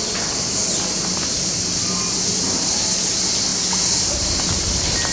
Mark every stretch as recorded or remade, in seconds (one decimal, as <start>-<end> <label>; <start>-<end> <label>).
0.0-5.1 recorded

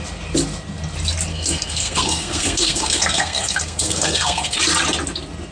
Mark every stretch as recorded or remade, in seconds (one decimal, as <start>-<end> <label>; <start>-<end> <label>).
0.0-1.3 recorded; 1.3-4.6 remade; 4.6-5.5 recorded

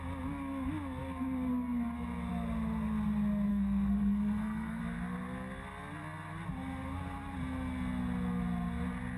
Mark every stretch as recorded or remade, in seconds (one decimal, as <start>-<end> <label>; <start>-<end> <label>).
0.0-3.5 recorded; 3.5-4.8 remade; 4.8-9.2 recorded

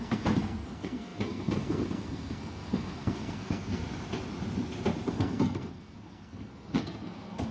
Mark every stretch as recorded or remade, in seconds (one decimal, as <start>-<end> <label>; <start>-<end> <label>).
0.0-3.8 remade; 3.8-5.1 recorded; 5.1-7.5 remade

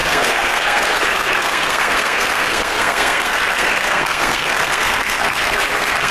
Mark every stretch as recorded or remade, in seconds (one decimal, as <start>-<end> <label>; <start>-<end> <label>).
0.0-6.1 remade